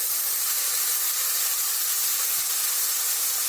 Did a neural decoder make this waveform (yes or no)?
no